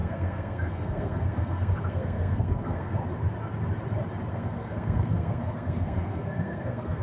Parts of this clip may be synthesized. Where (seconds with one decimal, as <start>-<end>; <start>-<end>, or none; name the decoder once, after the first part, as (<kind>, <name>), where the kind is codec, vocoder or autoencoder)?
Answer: 0.0-3.0 (codec, SNAC); 4.3-7.0